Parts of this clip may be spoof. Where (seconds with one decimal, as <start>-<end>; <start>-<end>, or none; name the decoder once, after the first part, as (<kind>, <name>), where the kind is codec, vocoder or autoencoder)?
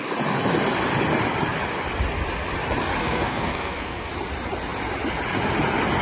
3.0-4.1 (codec, SNAC)